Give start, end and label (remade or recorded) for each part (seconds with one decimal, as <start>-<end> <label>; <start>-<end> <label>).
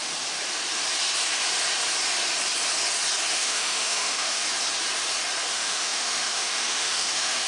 0.0-3.3 recorded; 3.3-4.4 remade; 4.4-5.5 recorded; 5.5-7.5 remade